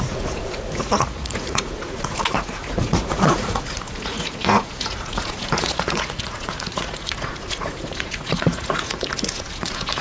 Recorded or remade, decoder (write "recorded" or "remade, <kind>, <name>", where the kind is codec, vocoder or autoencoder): remade, vocoder, Vocos